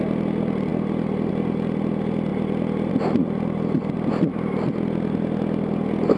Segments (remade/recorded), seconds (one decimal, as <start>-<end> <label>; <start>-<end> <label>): 0.0-6.2 recorded